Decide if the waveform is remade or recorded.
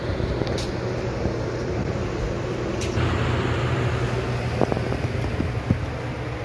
recorded